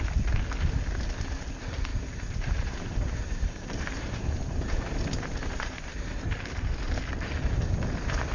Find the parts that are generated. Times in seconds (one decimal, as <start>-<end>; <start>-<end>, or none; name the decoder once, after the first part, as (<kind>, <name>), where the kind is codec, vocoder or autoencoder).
1.9-6.9 (vocoder, BigVGAN v2)

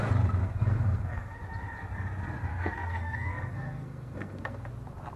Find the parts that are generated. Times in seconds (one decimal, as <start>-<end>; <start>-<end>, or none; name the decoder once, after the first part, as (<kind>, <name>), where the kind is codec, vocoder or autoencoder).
0.4-1.4 (codec, SNAC); 2.5-4.7

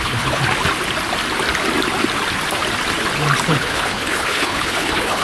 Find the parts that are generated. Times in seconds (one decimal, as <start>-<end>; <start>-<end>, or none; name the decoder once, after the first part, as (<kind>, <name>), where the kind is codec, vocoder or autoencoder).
0.0-0.4 (codec, HILCodec); 3.5-5.2

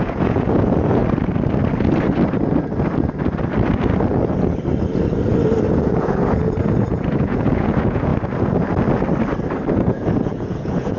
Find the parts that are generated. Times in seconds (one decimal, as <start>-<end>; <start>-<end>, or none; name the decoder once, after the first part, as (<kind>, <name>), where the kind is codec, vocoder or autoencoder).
0.0-1.0 (vocoder, Vocos); 5.7-8.1; 9.7-11.0

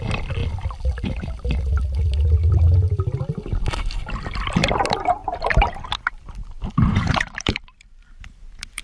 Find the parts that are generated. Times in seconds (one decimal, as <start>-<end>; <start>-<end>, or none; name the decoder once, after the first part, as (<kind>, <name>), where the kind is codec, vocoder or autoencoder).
5.2-7.6 (vocoder, BigVGAN v2)

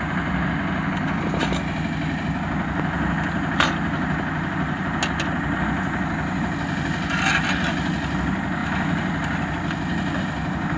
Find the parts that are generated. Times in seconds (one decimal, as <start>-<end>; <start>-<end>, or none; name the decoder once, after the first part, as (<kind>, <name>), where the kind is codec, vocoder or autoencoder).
none

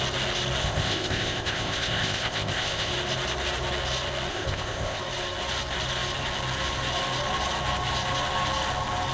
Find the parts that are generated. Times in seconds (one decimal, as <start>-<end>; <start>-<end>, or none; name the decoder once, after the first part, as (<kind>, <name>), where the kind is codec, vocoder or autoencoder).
0.6-2.9 (codec, ZipCodec); 4.3-5.0

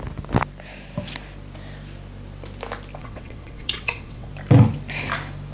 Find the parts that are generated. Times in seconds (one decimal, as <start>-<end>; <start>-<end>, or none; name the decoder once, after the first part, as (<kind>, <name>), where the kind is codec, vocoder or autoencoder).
3.0-4.3 (vocoder, WaveNeXt)